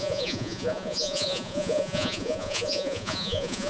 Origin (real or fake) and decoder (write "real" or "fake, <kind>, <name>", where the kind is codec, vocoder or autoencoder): fake, vocoder, Vocos